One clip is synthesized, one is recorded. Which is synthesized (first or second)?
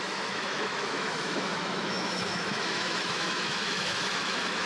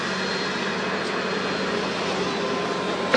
first